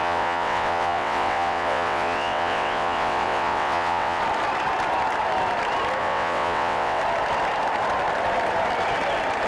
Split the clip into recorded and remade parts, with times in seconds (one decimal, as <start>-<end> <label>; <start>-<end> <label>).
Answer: 0.0-4.2 remade; 4.2-6.0 recorded; 6.0-7.0 remade; 7.0-9.5 recorded